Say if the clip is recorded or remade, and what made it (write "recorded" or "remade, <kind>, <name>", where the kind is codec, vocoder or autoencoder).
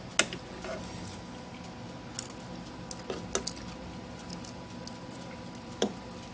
recorded